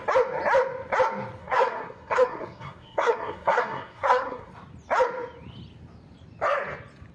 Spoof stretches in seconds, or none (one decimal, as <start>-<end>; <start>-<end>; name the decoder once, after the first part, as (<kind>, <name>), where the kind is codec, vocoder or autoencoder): 1.4-4.5 (codec, SNAC)